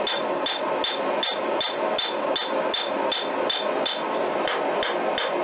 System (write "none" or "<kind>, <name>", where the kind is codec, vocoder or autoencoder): none